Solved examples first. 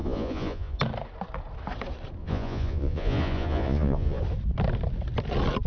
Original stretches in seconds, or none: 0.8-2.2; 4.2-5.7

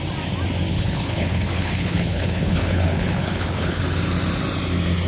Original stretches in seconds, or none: 0.0-0.7; 3.8-5.1